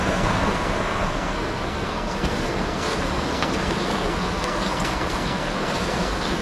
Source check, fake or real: fake